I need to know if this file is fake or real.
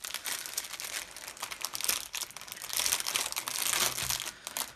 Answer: real